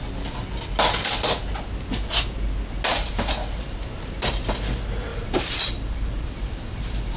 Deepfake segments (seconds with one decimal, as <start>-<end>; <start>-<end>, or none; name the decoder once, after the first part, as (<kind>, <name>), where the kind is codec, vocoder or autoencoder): 2.9-3.6 (vocoder, BigVGAN v2); 5.1-7.2